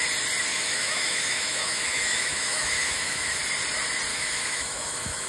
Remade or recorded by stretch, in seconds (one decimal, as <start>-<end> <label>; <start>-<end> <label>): 0.0-0.5 recorded; 0.5-3.4 remade; 3.4-4.1 recorded; 4.1-5.3 remade